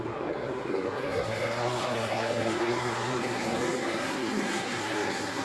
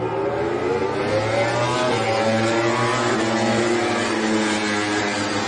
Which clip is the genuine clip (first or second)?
second